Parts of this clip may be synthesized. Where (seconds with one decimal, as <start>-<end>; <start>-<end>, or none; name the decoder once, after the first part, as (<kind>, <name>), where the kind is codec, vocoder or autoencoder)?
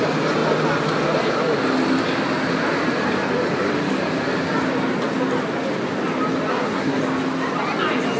6.5-7.0 (codec, SNAC)